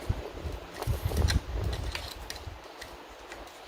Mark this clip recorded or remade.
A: recorded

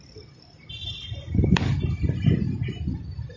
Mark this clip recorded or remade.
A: remade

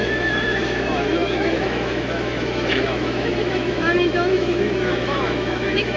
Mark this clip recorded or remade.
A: remade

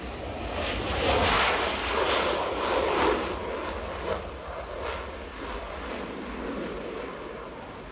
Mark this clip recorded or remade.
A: recorded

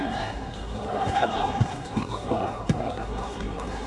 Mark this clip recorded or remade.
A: remade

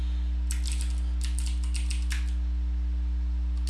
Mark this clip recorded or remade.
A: recorded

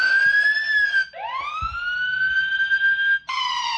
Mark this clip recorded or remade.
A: recorded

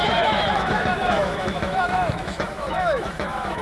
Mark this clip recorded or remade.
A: remade